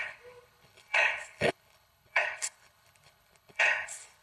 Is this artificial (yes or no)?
yes